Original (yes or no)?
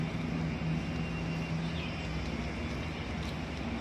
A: yes